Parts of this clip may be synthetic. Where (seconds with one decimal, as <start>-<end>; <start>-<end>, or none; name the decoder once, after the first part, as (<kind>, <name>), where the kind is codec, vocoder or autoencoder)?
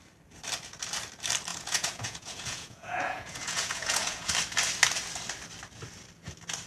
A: 1.5-4.3 (vocoder, Vocos)